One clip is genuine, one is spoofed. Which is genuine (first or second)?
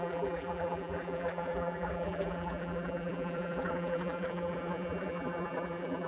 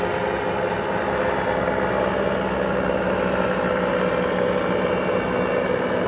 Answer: second